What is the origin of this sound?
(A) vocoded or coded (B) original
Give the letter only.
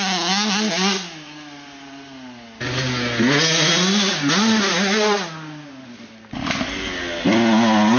B